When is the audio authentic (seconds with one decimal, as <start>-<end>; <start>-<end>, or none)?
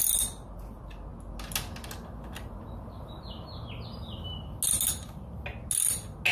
0.0-6.3